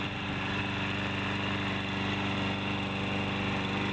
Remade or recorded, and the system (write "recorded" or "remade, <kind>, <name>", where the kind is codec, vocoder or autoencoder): recorded